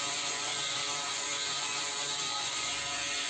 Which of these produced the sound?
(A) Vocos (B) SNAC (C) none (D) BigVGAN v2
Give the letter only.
A